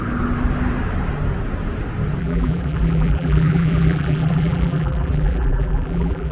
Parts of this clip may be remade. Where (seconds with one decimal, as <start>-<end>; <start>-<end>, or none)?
2.2-6.3